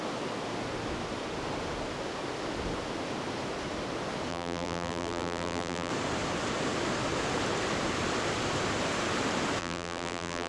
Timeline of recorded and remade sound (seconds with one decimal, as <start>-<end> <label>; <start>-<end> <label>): 0.0-4.3 recorded; 4.3-5.9 remade; 5.9-9.6 recorded; 9.6-10.5 remade